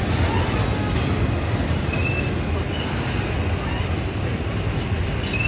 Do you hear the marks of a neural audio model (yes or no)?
no